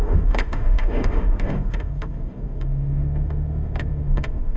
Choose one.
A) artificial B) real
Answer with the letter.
A